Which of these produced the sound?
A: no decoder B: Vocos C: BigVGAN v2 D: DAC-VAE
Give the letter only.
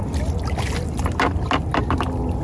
A